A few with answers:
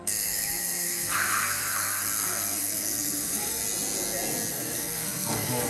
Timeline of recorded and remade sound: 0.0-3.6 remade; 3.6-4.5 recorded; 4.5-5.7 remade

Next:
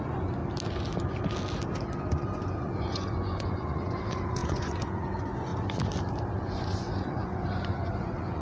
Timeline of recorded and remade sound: 0.0-0.4 remade; 0.4-2.1 recorded; 2.1-5.5 remade; 5.5-6.4 recorded; 6.4-8.4 remade

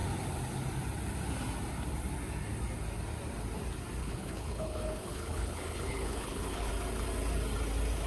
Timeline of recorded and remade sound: 0.0-4.0 recorded; 4.0-6.7 remade; 6.7-8.1 recorded

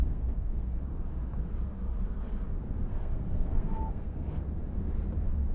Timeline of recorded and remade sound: 0.0-0.8 remade; 0.8-2.9 recorded; 2.9-4.4 remade; 4.4-5.5 recorded

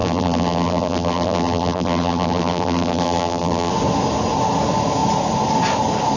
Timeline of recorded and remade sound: 0.0-3.7 remade; 3.7-6.2 recorded